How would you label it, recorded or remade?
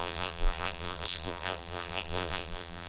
remade